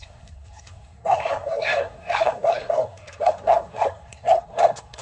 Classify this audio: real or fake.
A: fake